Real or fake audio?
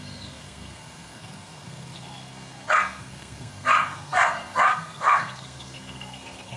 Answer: fake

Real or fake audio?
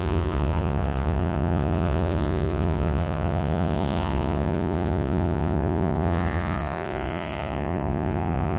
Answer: fake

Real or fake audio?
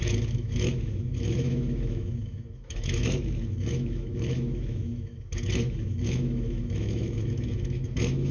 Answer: fake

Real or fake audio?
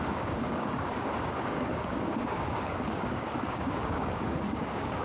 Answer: fake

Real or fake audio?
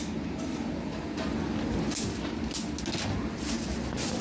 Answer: real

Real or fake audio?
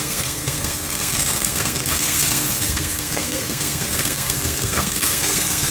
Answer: fake